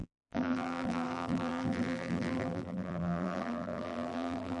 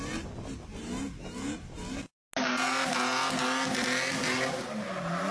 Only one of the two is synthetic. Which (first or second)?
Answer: first